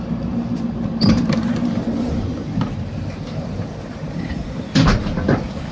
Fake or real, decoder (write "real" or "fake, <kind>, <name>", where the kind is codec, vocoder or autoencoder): fake, vocoder, BigVGAN v2